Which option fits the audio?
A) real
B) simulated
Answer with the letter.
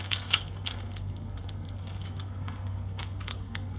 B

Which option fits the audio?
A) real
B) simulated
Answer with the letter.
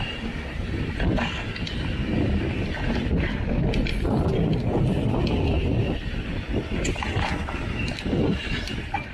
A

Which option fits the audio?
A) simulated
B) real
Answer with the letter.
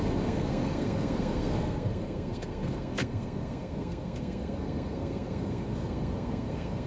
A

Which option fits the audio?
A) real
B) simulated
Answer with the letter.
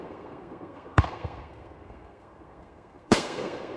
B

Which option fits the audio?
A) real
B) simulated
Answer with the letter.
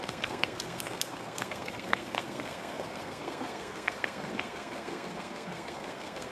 B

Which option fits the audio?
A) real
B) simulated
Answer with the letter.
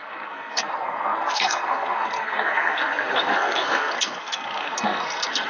B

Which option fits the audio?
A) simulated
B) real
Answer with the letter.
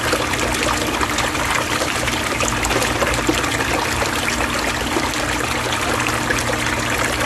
B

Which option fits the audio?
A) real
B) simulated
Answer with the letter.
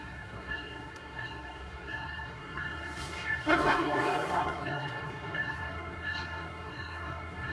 B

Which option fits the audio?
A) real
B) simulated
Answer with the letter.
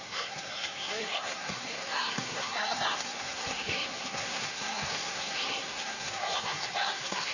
B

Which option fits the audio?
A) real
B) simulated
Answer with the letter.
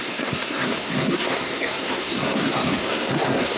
B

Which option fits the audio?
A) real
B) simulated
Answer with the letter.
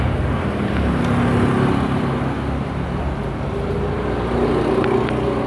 A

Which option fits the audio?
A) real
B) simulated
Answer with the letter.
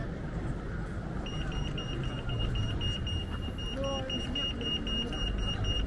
A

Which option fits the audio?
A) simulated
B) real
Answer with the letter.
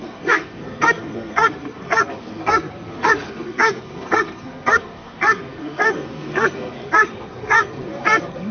A